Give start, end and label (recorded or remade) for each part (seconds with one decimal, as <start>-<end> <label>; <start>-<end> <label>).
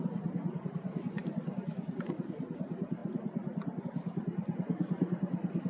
0.0-5.7 remade